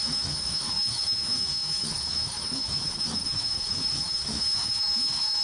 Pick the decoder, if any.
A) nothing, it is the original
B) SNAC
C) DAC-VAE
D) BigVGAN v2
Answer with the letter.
C